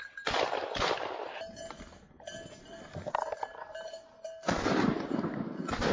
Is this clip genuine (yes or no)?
yes